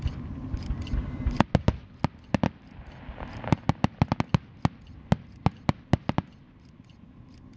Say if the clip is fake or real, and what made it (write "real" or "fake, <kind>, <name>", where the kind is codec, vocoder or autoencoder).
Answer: real